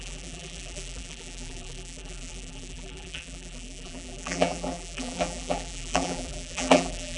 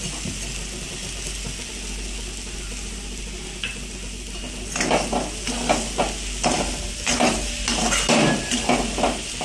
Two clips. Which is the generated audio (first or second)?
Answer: first